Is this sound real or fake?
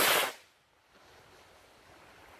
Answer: real